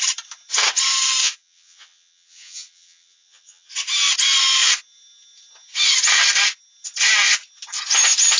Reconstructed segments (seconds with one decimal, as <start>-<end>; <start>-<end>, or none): 1.2-3.7